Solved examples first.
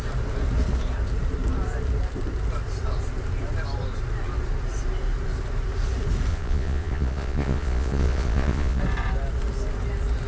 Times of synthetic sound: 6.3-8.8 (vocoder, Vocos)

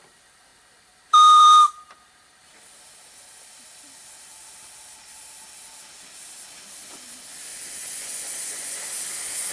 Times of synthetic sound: 7.5-8.8 (vocoder, Vocos)